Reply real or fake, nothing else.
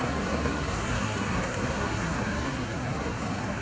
fake